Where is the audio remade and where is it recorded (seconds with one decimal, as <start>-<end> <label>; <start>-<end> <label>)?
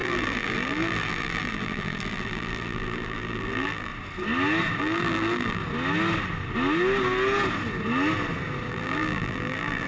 0.0-3.9 remade; 3.9-4.8 recorded; 4.8-5.6 remade; 5.6-8.7 recorded; 8.7-9.9 remade